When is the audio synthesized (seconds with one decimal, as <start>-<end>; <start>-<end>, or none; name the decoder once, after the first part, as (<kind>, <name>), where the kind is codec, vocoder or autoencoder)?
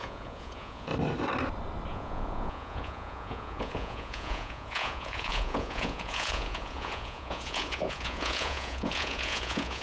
0.0-0.9 (vocoder, Vocos); 1.9-9.8